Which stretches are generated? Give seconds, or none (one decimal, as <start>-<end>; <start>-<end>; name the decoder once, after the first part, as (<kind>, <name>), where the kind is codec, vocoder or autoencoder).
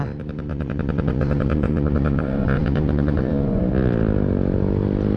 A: 0.5-3.6 (vocoder, Vocos)